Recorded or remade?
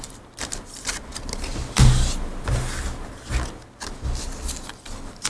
recorded